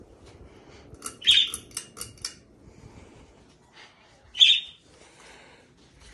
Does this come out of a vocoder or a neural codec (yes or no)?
no